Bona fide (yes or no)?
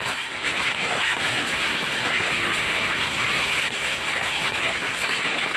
no